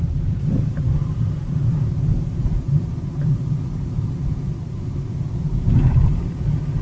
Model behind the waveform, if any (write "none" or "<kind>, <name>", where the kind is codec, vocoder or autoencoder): vocoder, BigVGAN v2